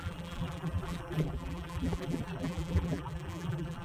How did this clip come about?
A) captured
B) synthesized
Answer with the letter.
B